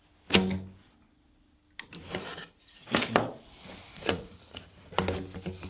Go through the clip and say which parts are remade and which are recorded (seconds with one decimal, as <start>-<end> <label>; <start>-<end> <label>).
0.0-2.3 recorded; 2.3-2.8 remade; 2.8-3.9 recorded; 3.9-4.9 remade; 4.9-5.7 recorded